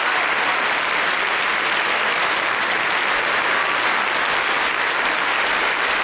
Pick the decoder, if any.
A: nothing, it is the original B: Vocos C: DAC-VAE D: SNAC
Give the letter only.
A